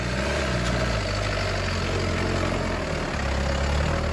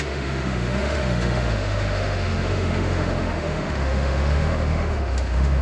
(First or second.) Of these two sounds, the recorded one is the first